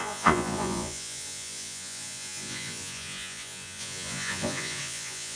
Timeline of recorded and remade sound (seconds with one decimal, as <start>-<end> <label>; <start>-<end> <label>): 0.0-5.4 remade